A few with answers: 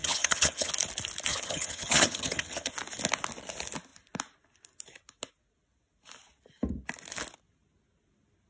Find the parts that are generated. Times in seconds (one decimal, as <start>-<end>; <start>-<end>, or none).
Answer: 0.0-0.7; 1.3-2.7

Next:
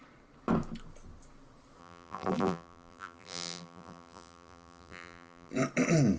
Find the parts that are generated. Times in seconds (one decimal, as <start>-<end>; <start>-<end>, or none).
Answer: 1.8-5.5

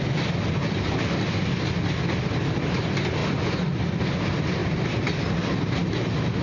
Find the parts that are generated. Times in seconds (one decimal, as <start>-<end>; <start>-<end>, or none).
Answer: 3.2-3.8